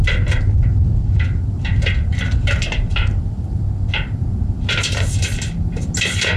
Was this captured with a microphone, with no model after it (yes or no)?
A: yes